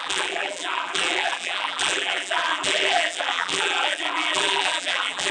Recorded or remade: remade